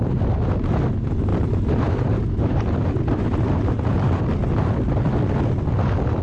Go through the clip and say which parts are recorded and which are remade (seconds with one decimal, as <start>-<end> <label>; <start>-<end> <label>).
0.0-1.3 recorded; 1.3-4.2 remade; 4.2-6.2 recorded